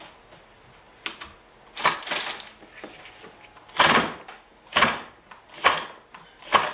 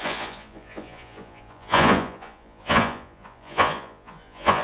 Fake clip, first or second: second